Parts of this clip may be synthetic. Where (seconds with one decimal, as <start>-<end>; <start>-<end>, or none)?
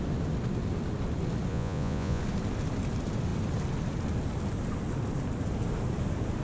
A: 1.5-2.2